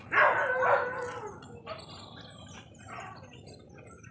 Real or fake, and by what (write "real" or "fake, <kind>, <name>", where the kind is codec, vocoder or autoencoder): real